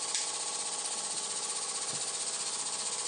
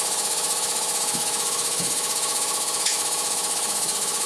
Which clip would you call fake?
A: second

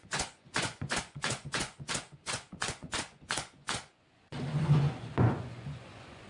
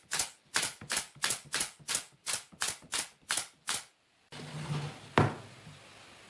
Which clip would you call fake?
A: first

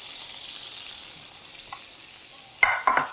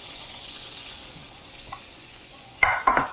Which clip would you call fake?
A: second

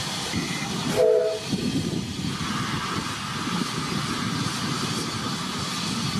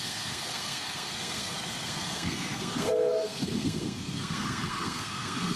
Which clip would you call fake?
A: second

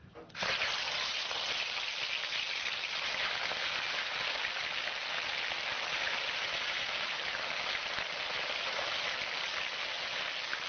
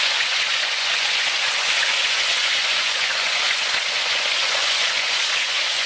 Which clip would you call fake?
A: second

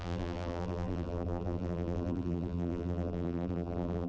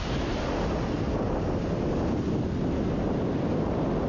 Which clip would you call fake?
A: first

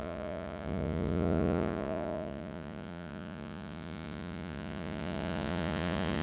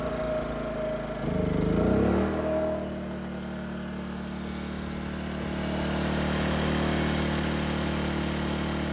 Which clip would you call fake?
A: first